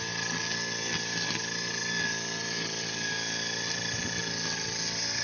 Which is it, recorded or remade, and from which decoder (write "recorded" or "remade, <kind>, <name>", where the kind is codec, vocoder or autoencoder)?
recorded